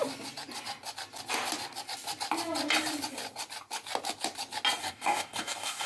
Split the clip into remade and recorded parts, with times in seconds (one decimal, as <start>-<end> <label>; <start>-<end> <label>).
0.0-4.8 recorded; 4.8-5.9 remade